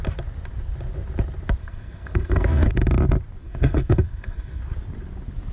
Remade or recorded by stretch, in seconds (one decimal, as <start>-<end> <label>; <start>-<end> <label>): 0.0-1.6 recorded; 1.6-2.7 remade; 2.7-3.4 recorded; 3.4-4.6 remade; 4.6-5.5 recorded